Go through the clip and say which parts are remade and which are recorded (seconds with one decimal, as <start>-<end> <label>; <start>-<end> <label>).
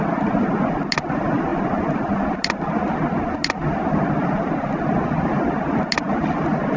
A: 0.0-6.8 recorded